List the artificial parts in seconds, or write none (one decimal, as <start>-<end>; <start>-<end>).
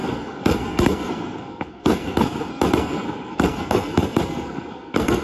0.0-5.2